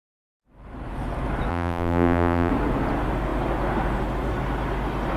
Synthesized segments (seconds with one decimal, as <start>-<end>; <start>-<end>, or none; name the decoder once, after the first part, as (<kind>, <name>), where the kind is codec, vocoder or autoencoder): 1.5-2.5 (vocoder, BigVGAN v2)